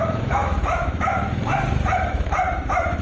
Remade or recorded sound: remade